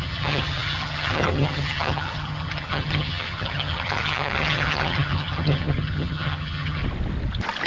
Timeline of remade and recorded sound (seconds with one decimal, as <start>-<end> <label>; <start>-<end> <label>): 0.0-6.8 remade; 6.8-7.7 recorded